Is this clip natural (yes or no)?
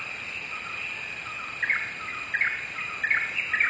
yes